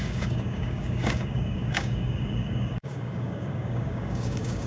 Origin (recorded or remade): remade